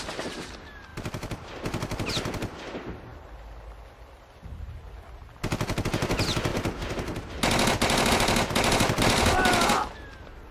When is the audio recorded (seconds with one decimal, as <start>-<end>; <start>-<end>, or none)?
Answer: 0.0-10.5